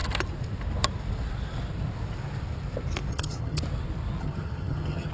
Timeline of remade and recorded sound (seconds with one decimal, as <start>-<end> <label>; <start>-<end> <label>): 0.0-3.1 recorded; 3.1-3.6 remade; 3.6-4.2 recorded; 4.2-5.1 remade